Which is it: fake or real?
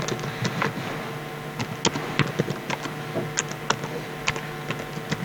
real